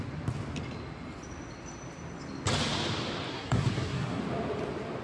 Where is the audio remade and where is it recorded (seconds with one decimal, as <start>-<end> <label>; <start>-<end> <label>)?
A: 0.0-3.3 recorded; 3.3-4.2 remade; 4.2-5.0 recorded